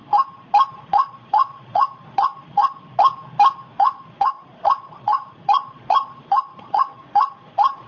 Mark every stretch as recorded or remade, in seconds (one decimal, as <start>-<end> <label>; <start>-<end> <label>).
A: 0.0-0.7 recorded; 0.7-2.8 remade; 2.8-3.7 recorded; 3.7-7.9 remade